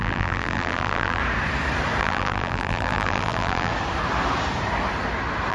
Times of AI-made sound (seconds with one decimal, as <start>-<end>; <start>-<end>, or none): 0.0-1.2; 2.0-3.7

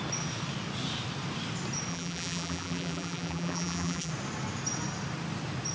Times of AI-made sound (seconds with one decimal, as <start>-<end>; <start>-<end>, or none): 1.9-4.1

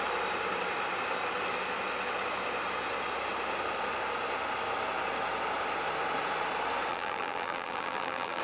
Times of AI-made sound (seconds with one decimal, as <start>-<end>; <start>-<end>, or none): 6.9-8.4

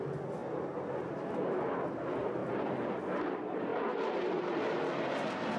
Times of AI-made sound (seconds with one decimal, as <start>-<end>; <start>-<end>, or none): 2.4-3.0

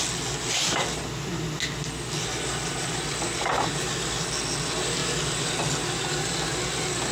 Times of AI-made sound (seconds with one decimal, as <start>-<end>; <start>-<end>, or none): none

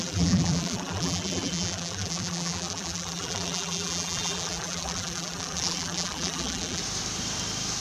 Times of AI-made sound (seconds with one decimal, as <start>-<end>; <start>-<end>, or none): 0.0-6.8

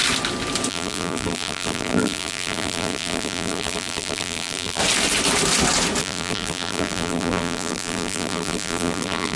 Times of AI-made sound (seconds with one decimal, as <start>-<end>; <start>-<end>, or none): 0.7-4.8; 6.0-9.4